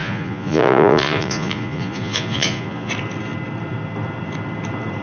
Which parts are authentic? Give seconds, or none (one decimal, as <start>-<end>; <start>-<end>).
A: 2.9-5.0

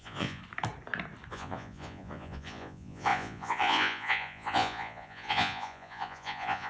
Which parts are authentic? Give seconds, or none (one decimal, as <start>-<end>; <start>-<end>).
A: 0.4-1.3

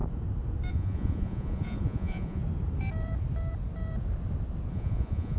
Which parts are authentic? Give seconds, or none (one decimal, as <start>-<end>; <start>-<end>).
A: 0.0-0.7; 2.4-4.7

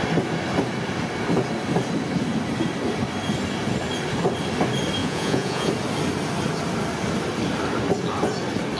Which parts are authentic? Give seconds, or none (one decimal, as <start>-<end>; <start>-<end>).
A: 0.0-5.0; 5.7-8.8

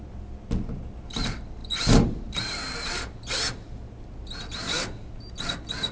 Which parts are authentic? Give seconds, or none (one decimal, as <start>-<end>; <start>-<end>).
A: 0.0-5.9